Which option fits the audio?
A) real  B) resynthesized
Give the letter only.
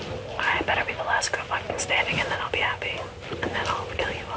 A